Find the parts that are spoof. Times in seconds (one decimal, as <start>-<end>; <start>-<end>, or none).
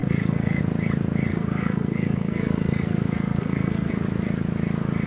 0.0-0.6; 1.3-3.9